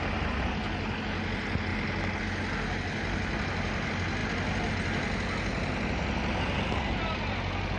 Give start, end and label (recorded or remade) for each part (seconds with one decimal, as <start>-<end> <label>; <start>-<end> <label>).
0.0-7.8 recorded